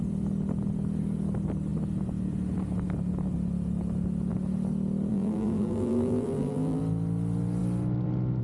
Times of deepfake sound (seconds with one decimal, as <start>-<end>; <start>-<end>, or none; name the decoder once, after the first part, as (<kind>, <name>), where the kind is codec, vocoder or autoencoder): 5.1-6.8 (vocoder, BigVGAN v2)